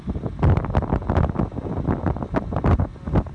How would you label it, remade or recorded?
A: recorded